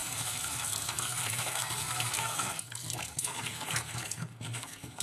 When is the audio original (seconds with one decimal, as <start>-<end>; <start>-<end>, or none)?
none